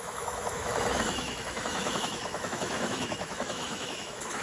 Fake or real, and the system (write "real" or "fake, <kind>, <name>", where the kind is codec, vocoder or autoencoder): fake, autoencoder, DAC-VAE